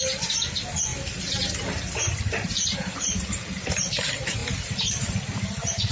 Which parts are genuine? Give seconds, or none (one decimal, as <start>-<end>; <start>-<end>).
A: 0.0-4.4